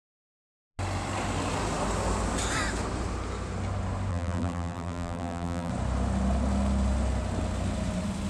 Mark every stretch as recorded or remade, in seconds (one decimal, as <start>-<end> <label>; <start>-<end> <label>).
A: 0.0-4.1 recorded; 4.1-5.7 remade; 5.7-8.3 recorded